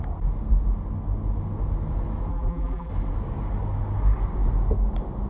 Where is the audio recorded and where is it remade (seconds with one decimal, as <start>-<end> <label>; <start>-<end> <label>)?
0.0-2.3 recorded; 2.3-2.9 remade; 2.9-5.3 recorded